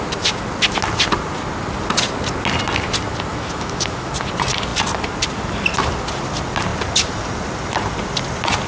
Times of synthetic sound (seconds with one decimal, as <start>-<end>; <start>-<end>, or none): 3.3-4.1